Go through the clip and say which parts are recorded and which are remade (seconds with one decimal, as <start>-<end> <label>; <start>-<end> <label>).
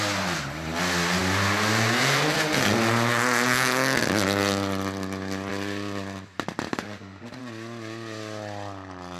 0.0-6.7 recorded; 6.7-7.4 remade; 7.4-9.2 recorded